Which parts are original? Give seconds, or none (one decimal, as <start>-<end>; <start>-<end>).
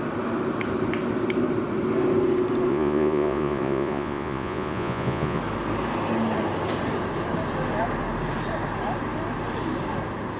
0.0-2.7; 5.4-10.4